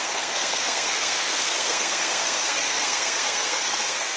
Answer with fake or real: fake